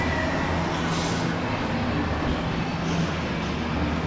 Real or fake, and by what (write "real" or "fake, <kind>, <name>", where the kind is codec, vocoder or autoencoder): real